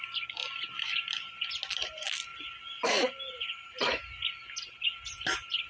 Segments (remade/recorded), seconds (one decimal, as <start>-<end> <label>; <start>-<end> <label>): 0.0-5.7 recorded